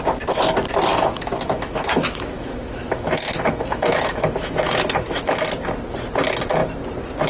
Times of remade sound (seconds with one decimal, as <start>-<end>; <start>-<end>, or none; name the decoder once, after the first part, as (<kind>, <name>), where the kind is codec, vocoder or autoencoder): 0.9-5.2 (autoencoder, DAC-VAE)